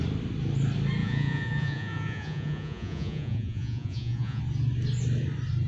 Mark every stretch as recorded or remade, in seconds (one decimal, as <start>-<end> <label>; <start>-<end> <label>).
0.0-1.0 recorded; 1.0-4.4 remade; 4.4-5.7 recorded